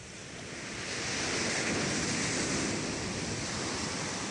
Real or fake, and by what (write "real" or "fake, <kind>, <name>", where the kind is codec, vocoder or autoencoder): real